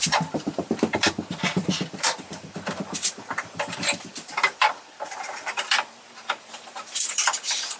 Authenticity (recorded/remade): remade